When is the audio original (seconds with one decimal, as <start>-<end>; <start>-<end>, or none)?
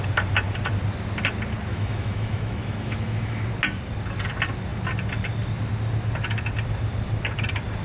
0.0-1.7; 3.4-7.8